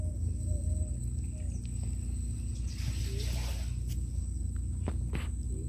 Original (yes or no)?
yes